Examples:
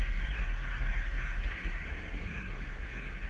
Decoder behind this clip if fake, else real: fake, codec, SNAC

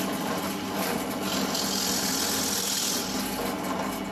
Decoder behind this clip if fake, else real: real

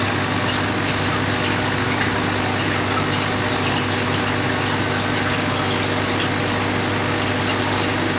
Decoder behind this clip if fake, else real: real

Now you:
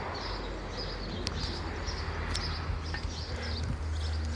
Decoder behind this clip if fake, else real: real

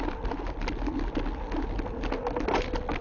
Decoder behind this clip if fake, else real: real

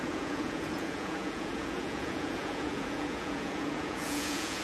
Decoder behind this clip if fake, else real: fake, vocoder, Vocos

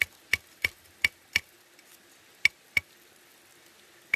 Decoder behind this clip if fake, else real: real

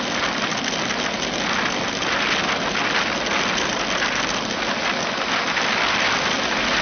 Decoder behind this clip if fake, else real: real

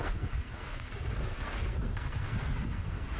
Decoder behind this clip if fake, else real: fake, codec, SNAC